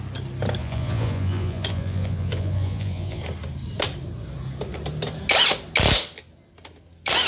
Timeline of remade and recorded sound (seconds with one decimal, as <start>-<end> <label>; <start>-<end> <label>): 0.0-0.6 recorded; 0.6-3.2 remade; 3.2-7.3 recorded